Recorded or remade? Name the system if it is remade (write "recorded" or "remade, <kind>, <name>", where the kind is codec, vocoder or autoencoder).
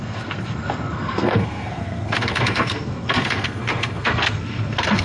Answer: remade, codec, SNAC